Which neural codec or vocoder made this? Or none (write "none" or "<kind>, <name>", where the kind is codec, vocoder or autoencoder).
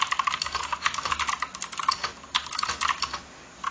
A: none